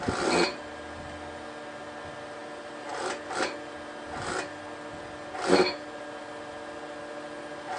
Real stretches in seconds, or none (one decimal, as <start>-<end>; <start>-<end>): 0.0-7.8